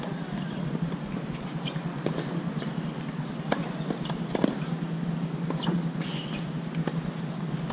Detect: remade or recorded recorded